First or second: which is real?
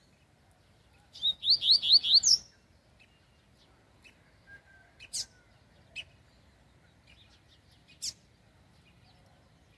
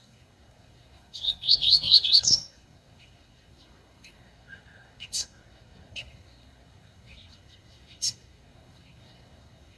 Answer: first